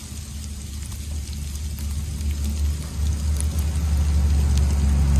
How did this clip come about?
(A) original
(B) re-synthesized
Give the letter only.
A